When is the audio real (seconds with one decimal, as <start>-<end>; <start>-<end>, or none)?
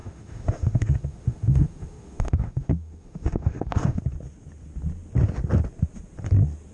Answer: 4.0-6.7